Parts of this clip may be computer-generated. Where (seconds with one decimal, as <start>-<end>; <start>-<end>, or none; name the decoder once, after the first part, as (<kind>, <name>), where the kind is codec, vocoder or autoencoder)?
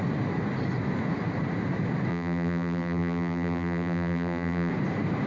2.1-4.7 (vocoder, BigVGAN v2)